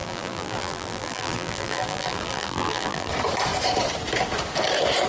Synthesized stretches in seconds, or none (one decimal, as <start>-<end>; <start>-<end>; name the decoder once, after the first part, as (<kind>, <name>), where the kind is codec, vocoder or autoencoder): 0.0-3.1 (vocoder, BigVGAN v2)